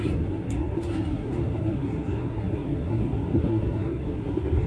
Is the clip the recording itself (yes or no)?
no